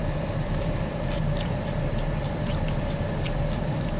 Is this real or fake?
fake